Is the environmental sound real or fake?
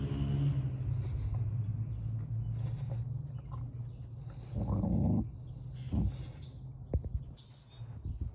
real